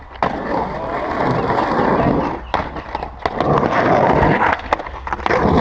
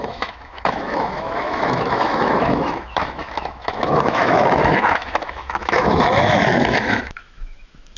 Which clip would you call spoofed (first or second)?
second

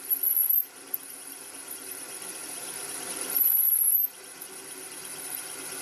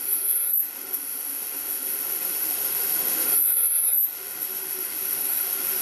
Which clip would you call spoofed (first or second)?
second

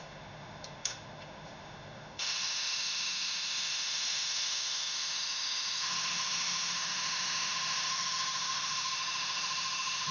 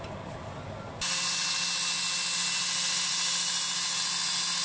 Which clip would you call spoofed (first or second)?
first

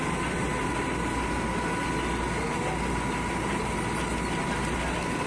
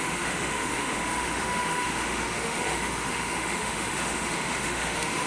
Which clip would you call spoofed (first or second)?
second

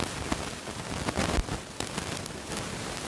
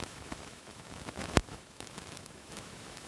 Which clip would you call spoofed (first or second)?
second